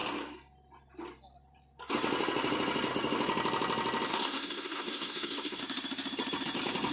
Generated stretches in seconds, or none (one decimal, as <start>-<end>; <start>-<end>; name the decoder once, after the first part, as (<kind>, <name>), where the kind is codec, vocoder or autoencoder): 4.1-5.6 (codec, SNAC)